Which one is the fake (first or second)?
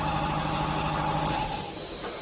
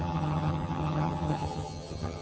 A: second